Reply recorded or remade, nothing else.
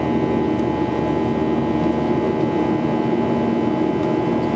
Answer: recorded